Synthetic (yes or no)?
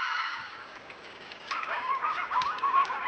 yes